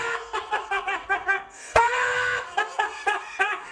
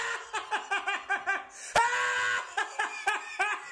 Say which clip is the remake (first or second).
first